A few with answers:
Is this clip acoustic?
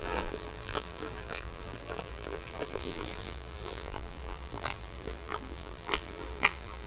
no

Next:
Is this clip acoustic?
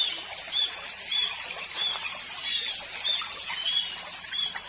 yes